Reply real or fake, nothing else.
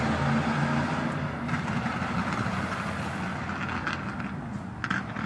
real